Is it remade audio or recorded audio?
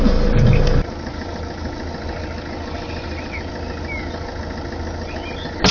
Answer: recorded